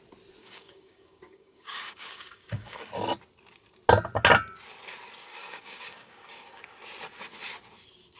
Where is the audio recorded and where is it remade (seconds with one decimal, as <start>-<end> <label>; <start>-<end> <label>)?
0.0-0.4 recorded; 0.4-2.9 remade; 2.9-5.2 recorded; 5.2-6.6 remade; 6.6-8.2 recorded